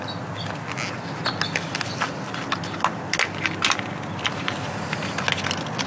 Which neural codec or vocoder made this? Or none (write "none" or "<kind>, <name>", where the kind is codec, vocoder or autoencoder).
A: none